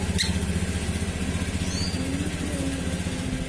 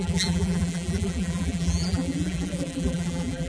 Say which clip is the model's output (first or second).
second